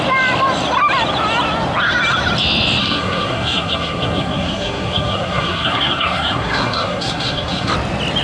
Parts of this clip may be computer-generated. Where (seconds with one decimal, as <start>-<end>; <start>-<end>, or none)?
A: 2.8-7.7